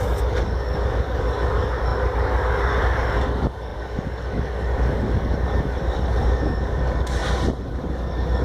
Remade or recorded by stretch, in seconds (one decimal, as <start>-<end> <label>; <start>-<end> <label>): 0.0-7.2 remade; 7.2-7.7 recorded; 7.7-8.4 remade